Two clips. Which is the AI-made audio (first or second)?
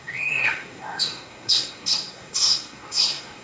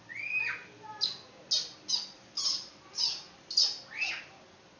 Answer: first